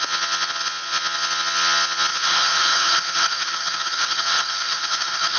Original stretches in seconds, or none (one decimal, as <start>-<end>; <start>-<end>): 0.0-2.1